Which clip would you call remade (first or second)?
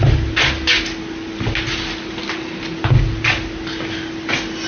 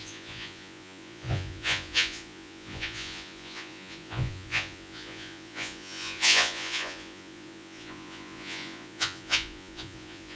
second